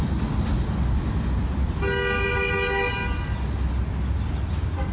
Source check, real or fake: real